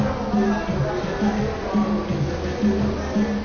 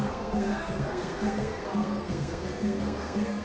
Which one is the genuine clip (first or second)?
first